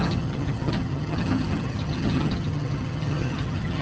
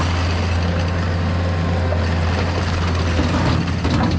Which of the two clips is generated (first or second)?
first